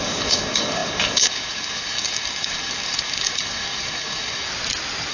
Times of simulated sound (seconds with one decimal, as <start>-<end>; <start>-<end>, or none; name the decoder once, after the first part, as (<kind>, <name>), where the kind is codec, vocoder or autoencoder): 0.0-4.5 (codec, DAC)